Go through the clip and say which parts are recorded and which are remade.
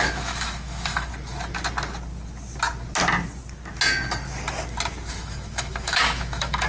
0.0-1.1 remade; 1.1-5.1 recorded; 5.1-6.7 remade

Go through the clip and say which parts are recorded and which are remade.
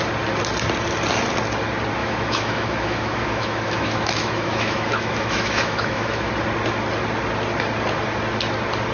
0.0-2.0 recorded; 2.0-6.3 remade; 6.3-8.9 recorded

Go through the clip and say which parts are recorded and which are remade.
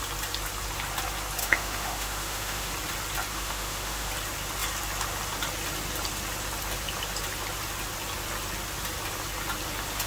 0.0-1.4 recorded; 1.4-2.7 remade; 2.7-3.3 recorded; 3.3-4.1 remade; 4.1-10.1 recorded